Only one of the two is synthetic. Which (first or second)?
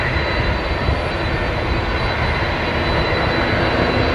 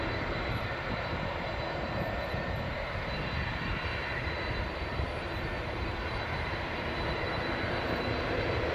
second